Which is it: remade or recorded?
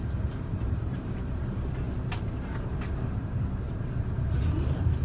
remade